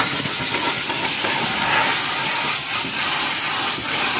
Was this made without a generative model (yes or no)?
yes